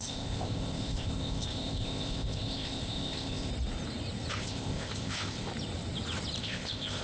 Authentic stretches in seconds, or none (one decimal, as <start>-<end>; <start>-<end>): 3.5-4.3; 5.5-6.4